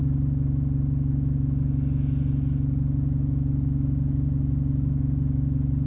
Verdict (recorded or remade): recorded